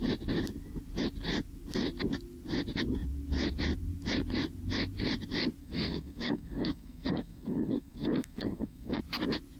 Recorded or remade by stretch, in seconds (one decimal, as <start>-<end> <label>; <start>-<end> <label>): 0.0-5.6 recorded; 5.6-9.0 remade; 9.0-9.6 recorded